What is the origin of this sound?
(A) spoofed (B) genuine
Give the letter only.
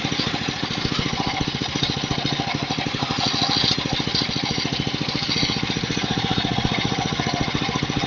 B